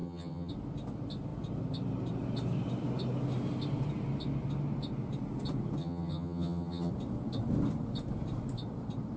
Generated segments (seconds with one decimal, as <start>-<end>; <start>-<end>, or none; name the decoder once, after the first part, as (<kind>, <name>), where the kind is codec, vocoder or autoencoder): 0.0-0.5 (vocoder, HiFi-GAN); 5.8-6.9